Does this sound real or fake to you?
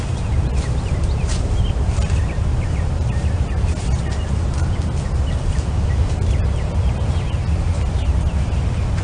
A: real